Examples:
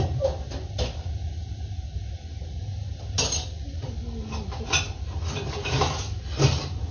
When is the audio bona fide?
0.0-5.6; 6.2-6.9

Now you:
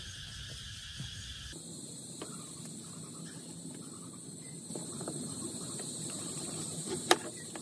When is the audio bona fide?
0.0-4.7; 7.1-7.6

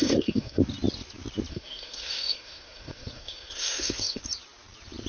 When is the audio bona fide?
0.6-1.5; 4.2-5.1